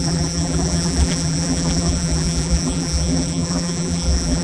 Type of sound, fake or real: fake